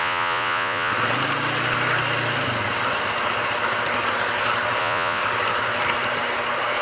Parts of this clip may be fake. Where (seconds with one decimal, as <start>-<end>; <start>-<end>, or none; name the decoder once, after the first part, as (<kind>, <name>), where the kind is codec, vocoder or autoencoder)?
0.0-0.9 (vocoder, Vocos); 4.8-5.2

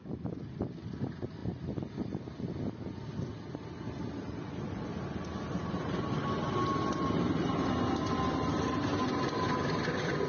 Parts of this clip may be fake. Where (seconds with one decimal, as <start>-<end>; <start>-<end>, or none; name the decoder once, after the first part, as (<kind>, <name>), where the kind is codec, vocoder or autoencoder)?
none

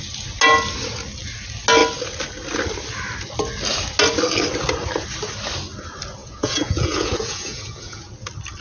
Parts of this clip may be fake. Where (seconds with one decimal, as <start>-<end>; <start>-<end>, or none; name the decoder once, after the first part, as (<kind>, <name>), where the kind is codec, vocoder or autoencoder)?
6.2-8.1 (vocoder, Vocos)

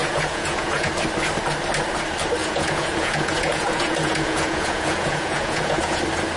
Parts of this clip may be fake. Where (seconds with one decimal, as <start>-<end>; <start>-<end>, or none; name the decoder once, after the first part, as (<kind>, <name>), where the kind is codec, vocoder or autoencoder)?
0.0-0.9 (vocoder, Vocos); 2.4-6.0

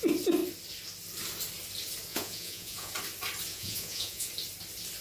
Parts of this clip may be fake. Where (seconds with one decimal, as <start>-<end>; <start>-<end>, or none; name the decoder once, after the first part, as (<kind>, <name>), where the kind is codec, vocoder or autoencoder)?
2.1-2.9 (vocoder, Vocos); 3.5-4.3